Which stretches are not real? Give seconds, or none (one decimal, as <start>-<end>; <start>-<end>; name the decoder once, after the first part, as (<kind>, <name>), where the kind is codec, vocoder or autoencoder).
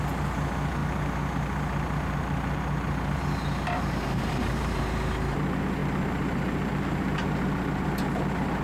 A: 0.8-4.8 (vocoder, BigVGAN v2); 5.8-8.6